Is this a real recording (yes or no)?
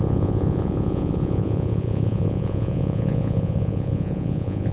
no